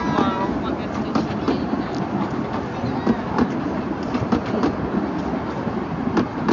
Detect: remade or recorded recorded